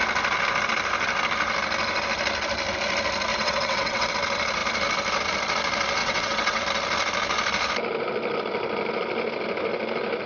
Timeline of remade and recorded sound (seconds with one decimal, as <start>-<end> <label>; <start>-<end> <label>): 0.0-3.3 recorded; 3.3-4.1 remade; 4.1-6.0 recorded; 6.0-6.6 remade; 6.6-10.3 recorded